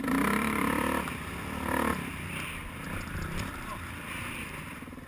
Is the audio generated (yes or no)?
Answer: yes